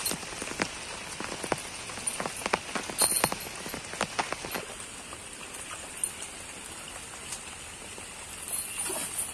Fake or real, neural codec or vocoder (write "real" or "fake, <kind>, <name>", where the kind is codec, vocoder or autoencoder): real